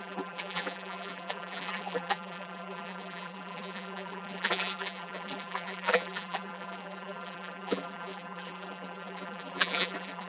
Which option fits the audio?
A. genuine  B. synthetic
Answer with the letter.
B